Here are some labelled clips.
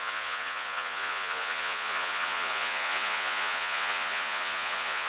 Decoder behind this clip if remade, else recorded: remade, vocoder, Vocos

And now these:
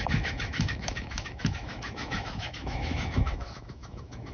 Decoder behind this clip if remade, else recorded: remade, autoencoder, DAC-VAE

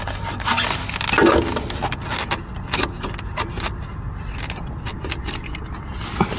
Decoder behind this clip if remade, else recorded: recorded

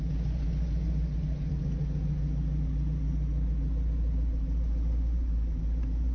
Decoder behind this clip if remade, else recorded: recorded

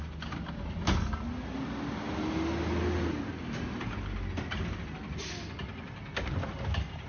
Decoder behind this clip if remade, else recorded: recorded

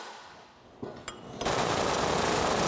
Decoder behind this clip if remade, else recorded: recorded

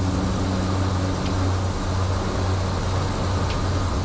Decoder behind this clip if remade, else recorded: recorded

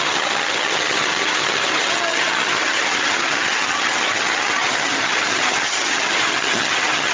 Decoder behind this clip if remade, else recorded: remade, vocoder, HiFi-GAN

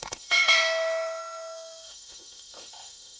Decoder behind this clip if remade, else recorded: remade, autoencoder, DAC-VAE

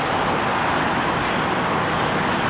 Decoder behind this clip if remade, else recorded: recorded